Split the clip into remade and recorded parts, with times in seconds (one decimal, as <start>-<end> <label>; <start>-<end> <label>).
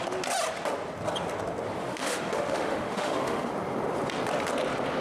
0.0-1.8 recorded; 1.8-3.5 remade; 3.5-5.0 recorded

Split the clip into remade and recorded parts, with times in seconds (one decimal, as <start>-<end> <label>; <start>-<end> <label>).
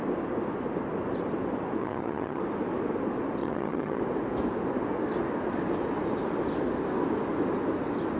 0.0-1.8 recorded; 1.8-2.4 remade; 2.4-3.4 recorded; 3.4-4.0 remade; 4.0-8.2 recorded